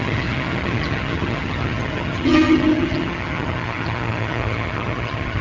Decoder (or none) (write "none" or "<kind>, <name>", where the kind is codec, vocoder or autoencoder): vocoder, HiFi-GAN